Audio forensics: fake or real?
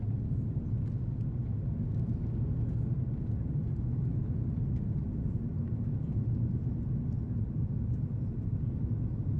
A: real